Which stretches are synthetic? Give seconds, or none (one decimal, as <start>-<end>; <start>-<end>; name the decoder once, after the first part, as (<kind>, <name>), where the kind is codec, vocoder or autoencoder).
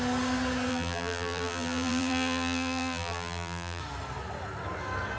0.7-3.8 (vocoder, BigVGAN v2)